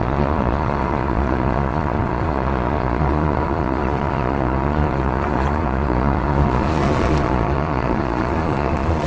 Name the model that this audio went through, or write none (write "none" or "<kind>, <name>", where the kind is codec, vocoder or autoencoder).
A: vocoder, Vocos